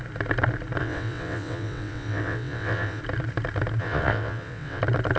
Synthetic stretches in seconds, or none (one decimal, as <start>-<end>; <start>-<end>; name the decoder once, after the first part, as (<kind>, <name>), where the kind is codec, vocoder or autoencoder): 0.8-3.0 (vocoder, WaveNeXt); 3.8-4.8